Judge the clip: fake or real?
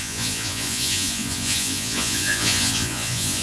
fake